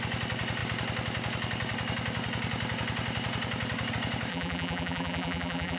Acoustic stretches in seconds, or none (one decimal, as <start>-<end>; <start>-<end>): 0.0-4.3